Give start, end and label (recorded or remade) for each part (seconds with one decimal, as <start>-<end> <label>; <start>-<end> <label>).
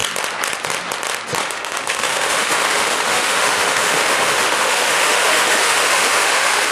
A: 0.0-1.4 recorded; 1.4-6.7 remade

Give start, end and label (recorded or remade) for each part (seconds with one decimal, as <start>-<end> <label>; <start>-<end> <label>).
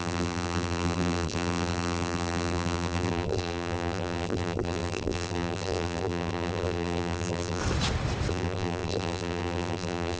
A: 0.0-7.6 remade; 7.6-8.3 recorded; 8.3-10.2 remade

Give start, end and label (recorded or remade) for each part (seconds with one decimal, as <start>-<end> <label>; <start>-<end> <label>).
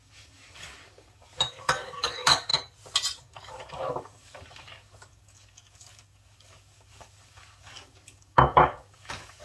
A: 0.0-2.5 remade; 2.5-3.2 recorded; 3.2-9.4 remade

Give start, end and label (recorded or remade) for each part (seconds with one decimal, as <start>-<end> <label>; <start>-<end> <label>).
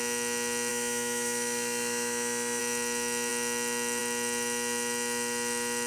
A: 0.0-0.7 recorded; 0.7-2.6 remade; 2.6-5.9 recorded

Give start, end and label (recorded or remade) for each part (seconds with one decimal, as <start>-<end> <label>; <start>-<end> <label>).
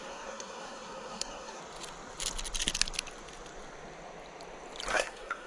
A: 0.0-1.6 remade; 1.6-4.9 recorded; 4.9-5.5 remade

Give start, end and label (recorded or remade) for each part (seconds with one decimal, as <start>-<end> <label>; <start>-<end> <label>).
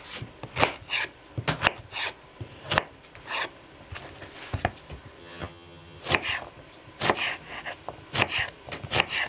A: 0.0-5.2 recorded; 5.2-6.0 remade; 6.0-9.3 recorded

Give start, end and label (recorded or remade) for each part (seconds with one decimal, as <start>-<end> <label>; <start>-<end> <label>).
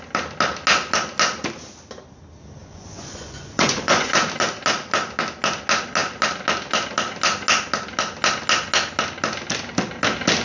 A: 0.0-2.6 recorded; 2.6-4.1 remade; 4.1-10.4 recorded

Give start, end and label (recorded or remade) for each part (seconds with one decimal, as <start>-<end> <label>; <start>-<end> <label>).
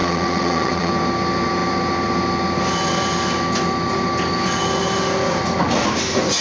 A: 0.0-0.9 remade; 0.9-6.4 recorded